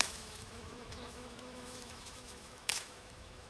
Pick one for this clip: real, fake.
fake